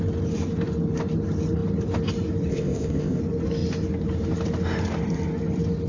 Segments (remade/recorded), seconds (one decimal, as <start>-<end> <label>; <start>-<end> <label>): 0.0-2.5 recorded; 2.5-3.2 remade; 3.2-5.9 recorded